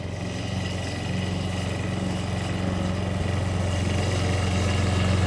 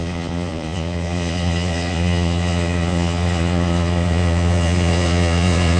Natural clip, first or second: first